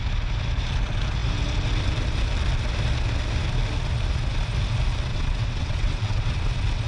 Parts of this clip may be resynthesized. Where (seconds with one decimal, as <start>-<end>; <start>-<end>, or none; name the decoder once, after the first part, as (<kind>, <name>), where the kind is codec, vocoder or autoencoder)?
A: 5.1-6.3 (vocoder, WaveNeXt)